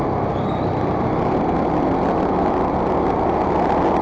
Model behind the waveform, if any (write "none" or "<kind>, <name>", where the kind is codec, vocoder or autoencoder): none